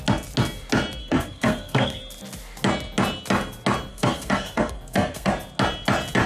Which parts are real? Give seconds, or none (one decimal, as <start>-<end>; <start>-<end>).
0.0-1.0; 2.0-3.9; 5.3-6.3